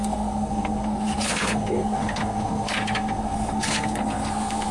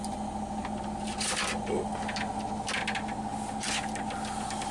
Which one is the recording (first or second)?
second